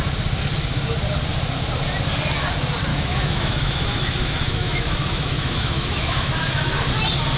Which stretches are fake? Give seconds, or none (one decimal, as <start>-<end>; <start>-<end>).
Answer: 2.9-6.9